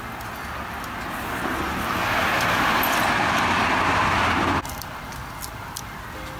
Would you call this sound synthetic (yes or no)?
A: no